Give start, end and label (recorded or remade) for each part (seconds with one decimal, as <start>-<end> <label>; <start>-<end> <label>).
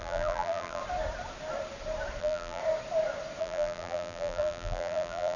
0.0-0.8 remade; 0.8-2.2 recorded; 2.2-2.6 remade; 2.6-3.4 recorded; 3.4-5.4 remade